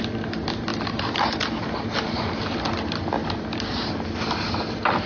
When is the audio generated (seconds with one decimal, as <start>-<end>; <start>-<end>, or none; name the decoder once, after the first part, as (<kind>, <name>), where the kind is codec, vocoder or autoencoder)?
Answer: none